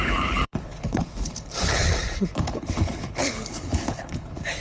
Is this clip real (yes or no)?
no